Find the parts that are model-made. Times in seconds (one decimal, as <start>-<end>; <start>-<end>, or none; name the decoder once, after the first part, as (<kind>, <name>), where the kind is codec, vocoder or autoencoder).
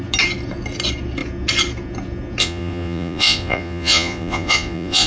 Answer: 2.4-5.1 (vocoder, Vocos)